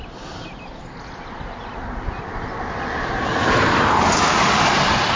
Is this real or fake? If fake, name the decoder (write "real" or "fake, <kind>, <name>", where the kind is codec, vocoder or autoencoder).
real